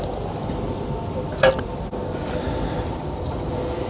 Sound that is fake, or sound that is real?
real